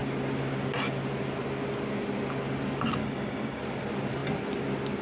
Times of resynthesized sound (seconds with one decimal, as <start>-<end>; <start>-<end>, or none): 3.0-3.6